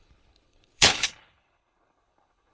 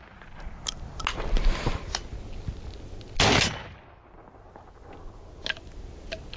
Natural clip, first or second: second